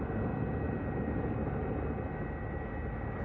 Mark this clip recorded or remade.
recorded